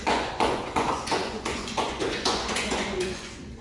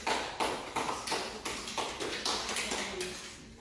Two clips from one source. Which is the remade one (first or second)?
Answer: first